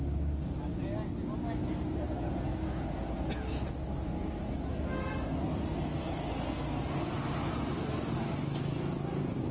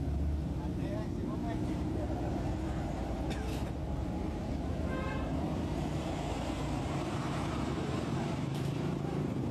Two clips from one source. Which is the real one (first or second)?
first